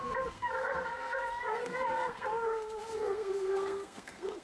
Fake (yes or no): yes